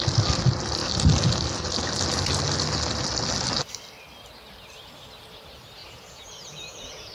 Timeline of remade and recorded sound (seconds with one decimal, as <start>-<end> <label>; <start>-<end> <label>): 0.0-5.8 recorded; 5.8-7.1 remade